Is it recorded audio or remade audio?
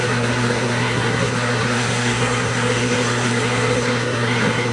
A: remade